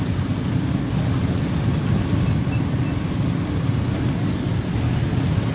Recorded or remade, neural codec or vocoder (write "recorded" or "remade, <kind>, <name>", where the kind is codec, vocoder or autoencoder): recorded